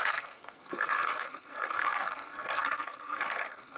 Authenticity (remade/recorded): remade